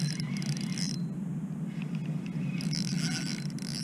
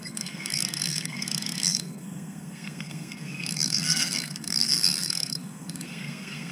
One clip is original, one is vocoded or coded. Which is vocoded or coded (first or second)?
second